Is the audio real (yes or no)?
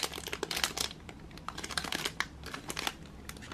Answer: yes